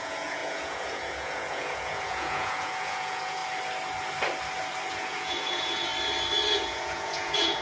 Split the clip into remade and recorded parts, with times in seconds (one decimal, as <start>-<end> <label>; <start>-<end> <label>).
0.0-3.4 remade; 3.4-4.9 recorded; 4.9-5.9 remade; 5.9-6.5 recorded; 6.5-7.6 remade